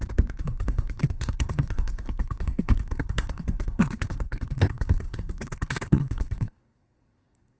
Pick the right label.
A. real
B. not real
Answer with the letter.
B